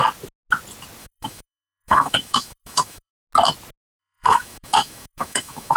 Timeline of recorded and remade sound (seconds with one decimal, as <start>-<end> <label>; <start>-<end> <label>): 0.0-1.0 recorded; 1.0-3.1 remade; 3.1-4.0 recorded; 4.0-5.8 remade